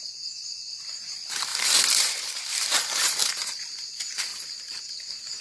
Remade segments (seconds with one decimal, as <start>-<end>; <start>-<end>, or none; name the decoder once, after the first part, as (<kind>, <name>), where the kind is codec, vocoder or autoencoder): 1.5-3.6 (vocoder, BigVGAN v2); 4.3-4.8